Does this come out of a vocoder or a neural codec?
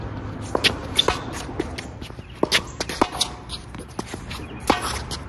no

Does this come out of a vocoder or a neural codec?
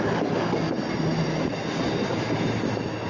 no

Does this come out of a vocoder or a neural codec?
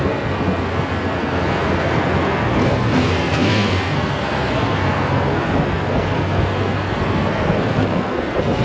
yes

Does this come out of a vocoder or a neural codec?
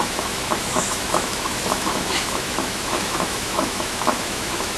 yes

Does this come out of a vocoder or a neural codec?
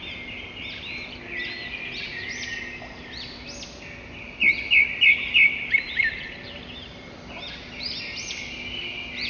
no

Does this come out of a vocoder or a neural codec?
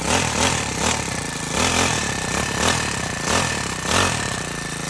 no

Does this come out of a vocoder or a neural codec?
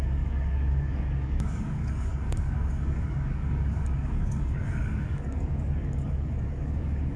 yes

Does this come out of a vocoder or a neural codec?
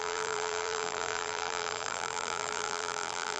yes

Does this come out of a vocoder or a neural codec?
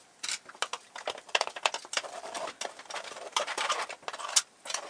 no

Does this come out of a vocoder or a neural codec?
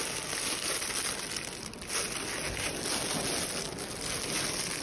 no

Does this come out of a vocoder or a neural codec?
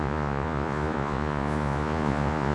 yes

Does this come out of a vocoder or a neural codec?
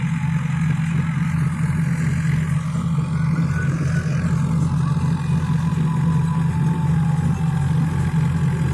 no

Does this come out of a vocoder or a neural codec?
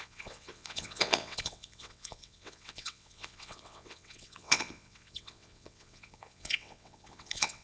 yes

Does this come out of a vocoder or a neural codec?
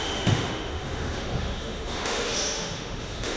yes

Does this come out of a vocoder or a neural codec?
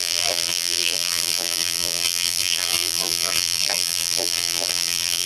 yes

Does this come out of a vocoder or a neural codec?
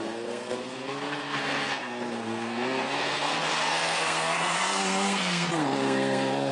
yes